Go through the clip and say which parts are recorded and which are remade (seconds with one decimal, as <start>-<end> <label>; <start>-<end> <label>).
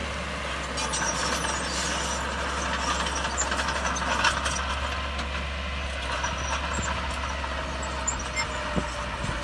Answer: 0.0-9.4 recorded